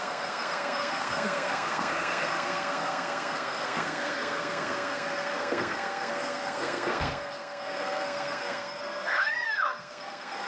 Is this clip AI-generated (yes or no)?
yes